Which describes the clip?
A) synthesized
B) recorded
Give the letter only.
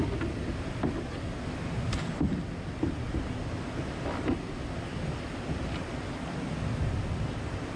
B